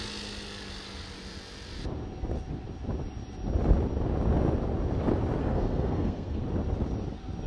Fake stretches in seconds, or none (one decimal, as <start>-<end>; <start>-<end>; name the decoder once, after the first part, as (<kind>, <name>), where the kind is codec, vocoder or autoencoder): 5.4-6.4 (codec, SNAC)

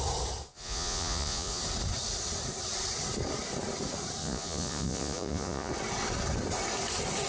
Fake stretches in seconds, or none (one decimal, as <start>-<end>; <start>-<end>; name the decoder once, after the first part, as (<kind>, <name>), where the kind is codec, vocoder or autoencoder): 0.5-1.6 (vocoder, Vocos); 4.2-5.7

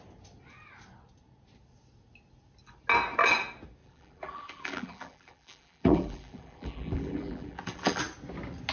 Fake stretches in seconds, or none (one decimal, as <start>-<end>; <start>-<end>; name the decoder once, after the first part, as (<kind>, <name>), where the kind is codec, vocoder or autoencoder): 3.8-8.0 (vocoder, BigVGAN v2)

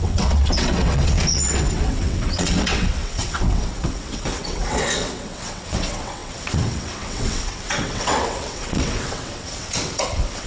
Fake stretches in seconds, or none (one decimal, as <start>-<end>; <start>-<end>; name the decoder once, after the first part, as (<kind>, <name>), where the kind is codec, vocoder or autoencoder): 0.0-10.5 (vocoder, WaveNeXt)

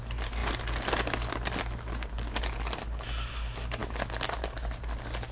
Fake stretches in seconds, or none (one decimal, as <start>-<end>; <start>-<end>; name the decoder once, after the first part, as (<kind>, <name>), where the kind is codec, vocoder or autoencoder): none